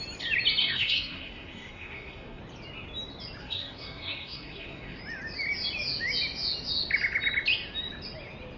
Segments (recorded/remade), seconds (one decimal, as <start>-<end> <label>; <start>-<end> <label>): 0.0-0.6 recorded; 0.6-2.4 remade; 2.4-3.4 recorded; 3.4-5.0 remade; 5.0-8.6 recorded